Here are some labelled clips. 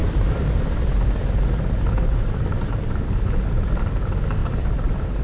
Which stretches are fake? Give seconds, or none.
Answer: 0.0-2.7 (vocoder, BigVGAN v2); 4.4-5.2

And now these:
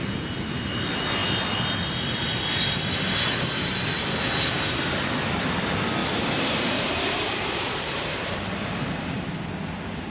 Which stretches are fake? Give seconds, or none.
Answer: 0.0-0.7 (vocoder, BigVGAN v2); 6.0-9.4

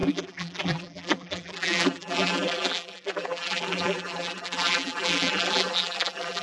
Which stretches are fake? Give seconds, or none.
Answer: 0.0-6.4 (vocoder, BigVGAN v2)

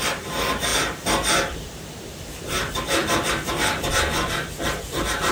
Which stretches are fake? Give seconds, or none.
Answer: 0.0-5.3 (vocoder, BigVGAN v2)

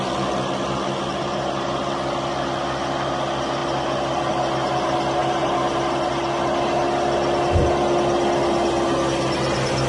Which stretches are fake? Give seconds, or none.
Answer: 1.1-1.8 (vocoder, BigVGAN v2)

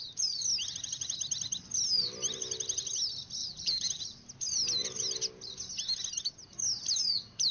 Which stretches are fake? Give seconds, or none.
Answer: 3.4-4.0 (vocoder, BigVGAN v2)

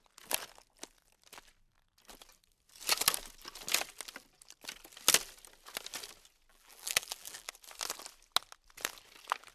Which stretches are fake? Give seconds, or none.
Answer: 6.5-7.5 (vocoder, BigVGAN v2)